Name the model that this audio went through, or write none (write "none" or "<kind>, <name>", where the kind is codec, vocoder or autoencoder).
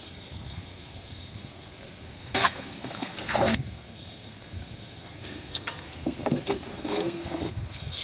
codec, SNAC